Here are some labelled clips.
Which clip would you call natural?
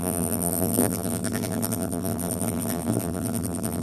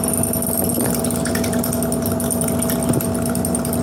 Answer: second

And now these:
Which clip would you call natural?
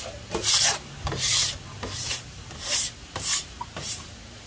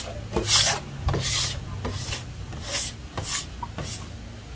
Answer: second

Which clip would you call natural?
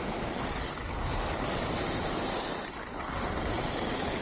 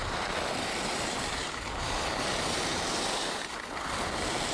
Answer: first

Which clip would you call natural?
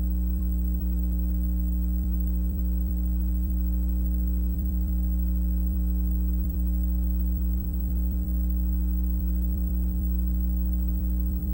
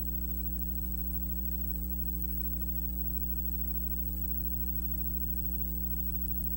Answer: second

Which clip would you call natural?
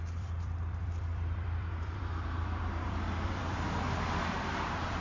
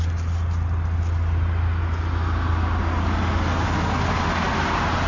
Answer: second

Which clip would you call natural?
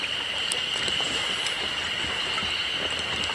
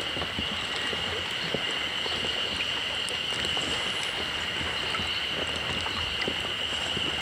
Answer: second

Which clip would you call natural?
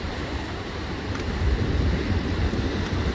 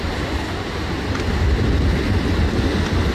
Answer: second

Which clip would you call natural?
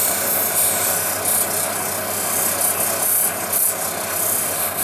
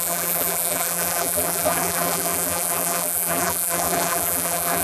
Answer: first